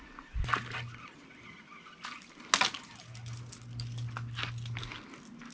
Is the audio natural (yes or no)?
yes